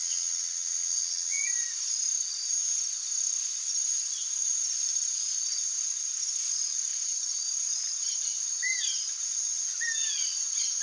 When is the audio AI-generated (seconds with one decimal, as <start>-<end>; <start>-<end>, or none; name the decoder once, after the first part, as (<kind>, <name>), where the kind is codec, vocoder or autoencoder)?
0.0-1.4 (vocoder, WaveNeXt)